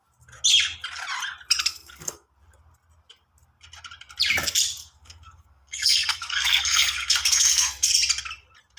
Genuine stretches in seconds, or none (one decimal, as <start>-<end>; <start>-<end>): 0.0-1.7; 2.3-4.8; 7.9-8.8